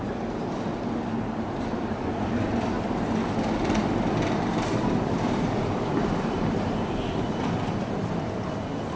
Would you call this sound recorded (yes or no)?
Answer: no